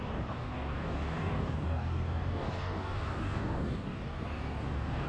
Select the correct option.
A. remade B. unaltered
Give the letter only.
A